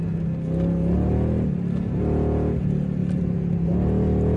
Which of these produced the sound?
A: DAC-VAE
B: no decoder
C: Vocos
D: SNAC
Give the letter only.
B